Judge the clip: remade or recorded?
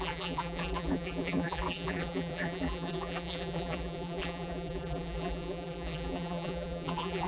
remade